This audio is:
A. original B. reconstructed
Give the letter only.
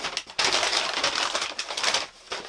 A